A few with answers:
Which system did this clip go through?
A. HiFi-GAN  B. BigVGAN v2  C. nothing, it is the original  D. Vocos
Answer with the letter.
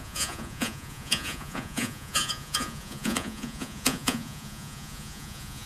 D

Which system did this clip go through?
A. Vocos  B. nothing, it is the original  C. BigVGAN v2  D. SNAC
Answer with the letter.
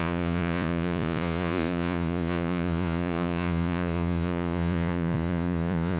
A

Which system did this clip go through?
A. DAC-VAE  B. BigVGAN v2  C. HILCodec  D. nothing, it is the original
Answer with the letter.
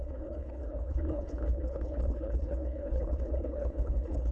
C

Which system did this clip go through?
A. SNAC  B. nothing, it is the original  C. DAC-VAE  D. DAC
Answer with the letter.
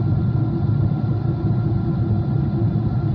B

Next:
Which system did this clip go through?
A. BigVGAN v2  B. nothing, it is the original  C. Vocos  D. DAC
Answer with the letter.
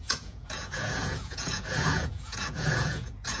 C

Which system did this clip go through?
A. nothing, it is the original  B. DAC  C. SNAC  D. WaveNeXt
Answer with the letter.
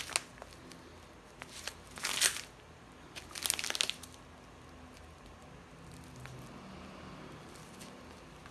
A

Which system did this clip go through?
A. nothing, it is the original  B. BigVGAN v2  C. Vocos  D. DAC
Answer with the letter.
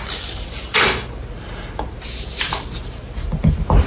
A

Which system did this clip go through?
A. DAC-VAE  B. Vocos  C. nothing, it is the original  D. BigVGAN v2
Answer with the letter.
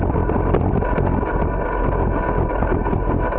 C